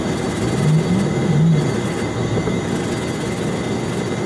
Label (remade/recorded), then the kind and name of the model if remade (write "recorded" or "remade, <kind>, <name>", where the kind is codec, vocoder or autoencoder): recorded